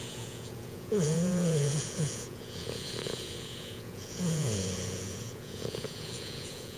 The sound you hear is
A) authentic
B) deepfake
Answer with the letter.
B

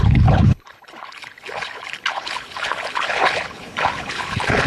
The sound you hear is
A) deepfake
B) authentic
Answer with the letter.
A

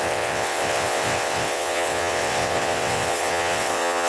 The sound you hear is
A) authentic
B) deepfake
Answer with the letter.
B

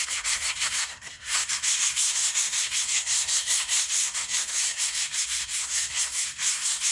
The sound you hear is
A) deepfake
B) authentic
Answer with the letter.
A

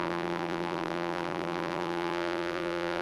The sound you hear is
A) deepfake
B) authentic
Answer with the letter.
A